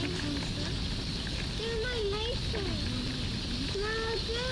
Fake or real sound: real